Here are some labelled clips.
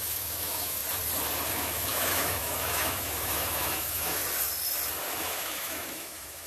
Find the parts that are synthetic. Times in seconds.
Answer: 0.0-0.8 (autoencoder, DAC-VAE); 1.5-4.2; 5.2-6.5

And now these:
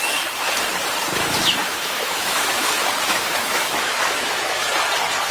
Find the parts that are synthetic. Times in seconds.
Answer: 1.6-4.7 (autoencoder, DAC-VAE)

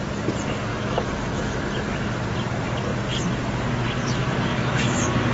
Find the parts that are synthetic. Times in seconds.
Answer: 0.7-1.6 (autoencoder, DAC-VAE); 4.5-5.3

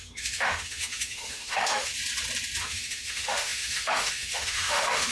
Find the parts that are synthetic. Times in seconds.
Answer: 0.0-1.9 (autoencoder, DAC-VAE); 2.6-5.1

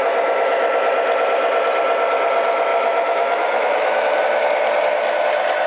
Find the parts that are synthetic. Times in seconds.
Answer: 2.7-4.2 (autoencoder, DAC-VAE)

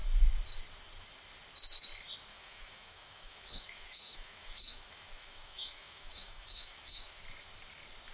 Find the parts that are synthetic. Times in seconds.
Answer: 2.3-7.2 (autoencoder, DAC-VAE)

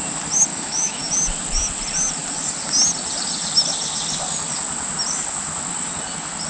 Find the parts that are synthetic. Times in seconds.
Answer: 0.5-1.0 (autoencoder, DAC-VAE)

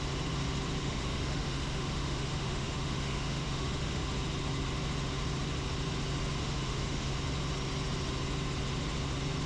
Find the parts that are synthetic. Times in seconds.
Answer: 0.8-4.0 (autoencoder, DAC-VAE); 6.4-7.1